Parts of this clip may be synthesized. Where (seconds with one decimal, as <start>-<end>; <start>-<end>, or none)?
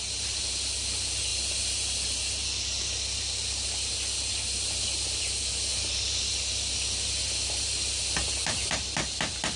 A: none